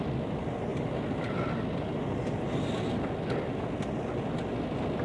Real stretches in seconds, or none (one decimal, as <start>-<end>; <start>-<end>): 0.0-5.0